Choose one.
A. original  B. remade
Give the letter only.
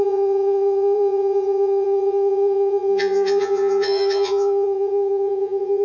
B